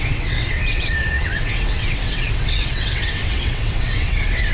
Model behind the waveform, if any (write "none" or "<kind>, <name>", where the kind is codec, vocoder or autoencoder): vocoder, WaveNeXt